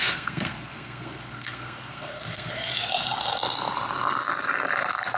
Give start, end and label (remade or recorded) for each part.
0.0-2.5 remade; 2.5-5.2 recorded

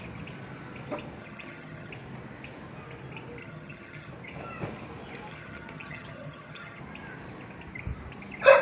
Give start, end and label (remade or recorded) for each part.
0.0-1.2 recorded; 1.2-1.9 remade; 1.9-3.4 recorded; 3.4-4.1 remade; 4.1-5.3 recorded; 5.3-6.8 remade; 6.8-8.6 recorded

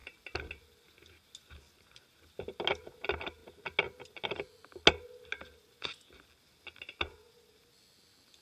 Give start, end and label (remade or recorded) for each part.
0.0-8.4 recorded

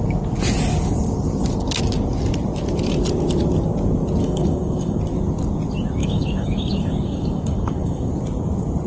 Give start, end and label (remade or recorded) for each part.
0.0-4.2 recorded; 4.2-5.0 remade; 5.0-6.0 recorded; 6.0-8.1 remade; 8.1-8.9 recorded

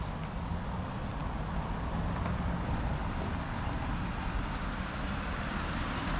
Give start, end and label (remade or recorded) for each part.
0.0-6.2 recorded

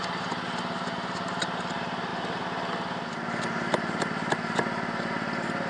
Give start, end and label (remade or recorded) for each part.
0.0-2.1 remade; 2.1-5.7 recorded

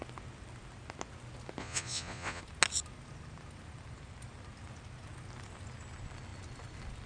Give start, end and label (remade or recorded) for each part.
0.0-1.6 recorded; 1.6-2.4 remade; 2.4-7.1 recorded

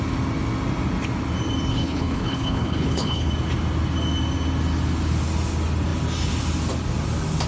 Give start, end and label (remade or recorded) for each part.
0.0-1.7 recorded; 1.7-3.3 remade; 3.3-7.5 recorded